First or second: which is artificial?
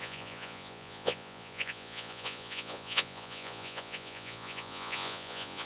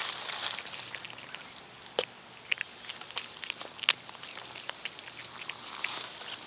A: first